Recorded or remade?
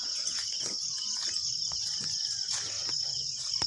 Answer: recorded